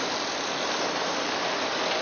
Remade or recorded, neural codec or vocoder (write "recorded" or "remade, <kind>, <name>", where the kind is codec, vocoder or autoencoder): recorded